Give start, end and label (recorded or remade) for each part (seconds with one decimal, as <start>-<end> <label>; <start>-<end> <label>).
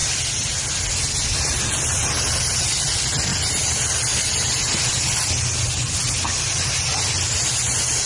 0.0-8.1 recorded